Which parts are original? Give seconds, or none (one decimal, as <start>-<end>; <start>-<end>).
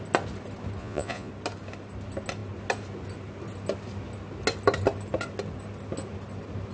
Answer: 0.0-0.8; 1.3-6.7